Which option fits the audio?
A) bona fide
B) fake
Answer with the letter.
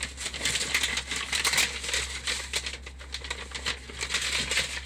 A